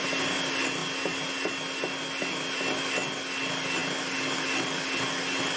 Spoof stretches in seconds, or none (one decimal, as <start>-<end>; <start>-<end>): none